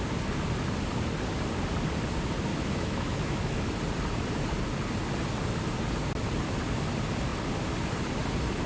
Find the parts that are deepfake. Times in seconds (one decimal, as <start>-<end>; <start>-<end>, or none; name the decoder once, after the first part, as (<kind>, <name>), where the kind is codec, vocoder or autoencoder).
2.5-3.6 (autoencoder, DAC-VAE)